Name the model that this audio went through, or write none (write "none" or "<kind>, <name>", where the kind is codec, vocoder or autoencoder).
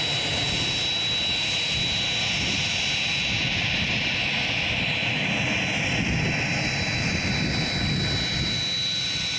none